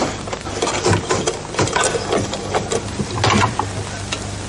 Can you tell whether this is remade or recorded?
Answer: recorded